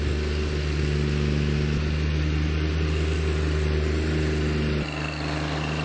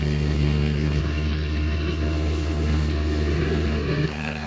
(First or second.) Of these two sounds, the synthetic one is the second